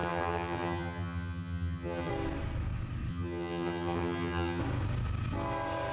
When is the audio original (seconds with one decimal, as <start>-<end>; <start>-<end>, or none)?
2.1-3.1; 4.6-5.9